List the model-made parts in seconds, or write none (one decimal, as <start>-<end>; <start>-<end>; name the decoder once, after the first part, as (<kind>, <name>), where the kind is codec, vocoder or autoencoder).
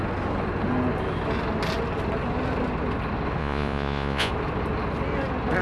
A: 3.4-4.3 (vocoder, Vocos)